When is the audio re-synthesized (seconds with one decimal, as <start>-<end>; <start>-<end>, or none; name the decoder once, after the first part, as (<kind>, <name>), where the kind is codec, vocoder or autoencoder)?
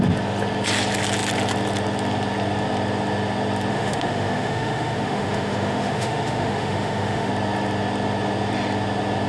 3.7-7.3 (autoencoder, DAC-VAE)